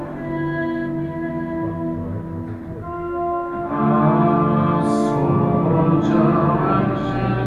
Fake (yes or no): no